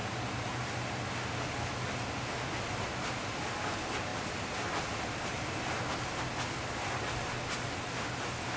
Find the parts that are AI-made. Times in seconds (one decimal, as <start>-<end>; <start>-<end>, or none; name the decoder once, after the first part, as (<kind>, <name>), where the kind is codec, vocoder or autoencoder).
none